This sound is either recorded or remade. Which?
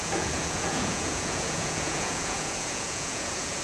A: remade